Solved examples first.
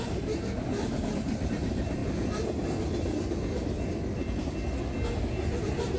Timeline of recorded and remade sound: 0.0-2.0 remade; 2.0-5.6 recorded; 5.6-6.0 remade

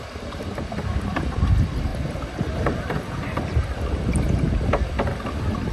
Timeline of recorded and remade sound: 0.0-5.7 recorded

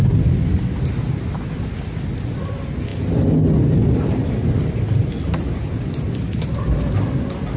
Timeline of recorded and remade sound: 0.0-7.6 recorded

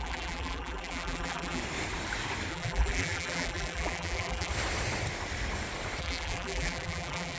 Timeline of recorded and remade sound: 0.0-1.6 remade; 1.6-2.5 recorded; 2.5-4.5 remade; 4.5-6.0 recorded; 6.0-7.4 remade